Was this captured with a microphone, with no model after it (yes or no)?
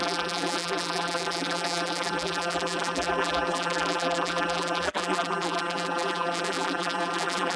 no